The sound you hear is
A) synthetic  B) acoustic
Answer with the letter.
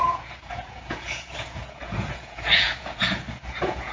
A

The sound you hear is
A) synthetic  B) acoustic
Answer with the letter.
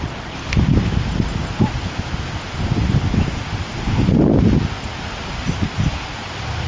B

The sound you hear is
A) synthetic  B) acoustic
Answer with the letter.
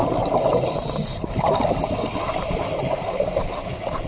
B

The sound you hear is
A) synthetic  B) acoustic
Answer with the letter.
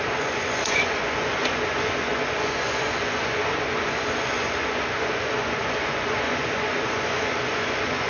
A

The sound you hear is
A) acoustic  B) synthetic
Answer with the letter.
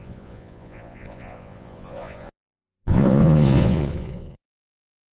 B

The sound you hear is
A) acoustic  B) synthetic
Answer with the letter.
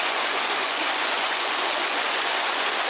B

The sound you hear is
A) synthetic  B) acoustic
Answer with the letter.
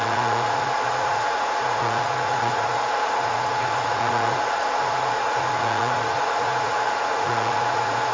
A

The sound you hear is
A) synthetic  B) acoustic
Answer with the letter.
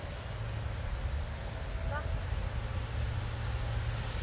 B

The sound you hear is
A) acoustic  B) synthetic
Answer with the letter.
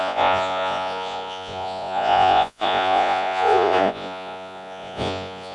B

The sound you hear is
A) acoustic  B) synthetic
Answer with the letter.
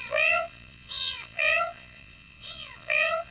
B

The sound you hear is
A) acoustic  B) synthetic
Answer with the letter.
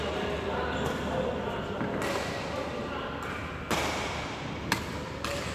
A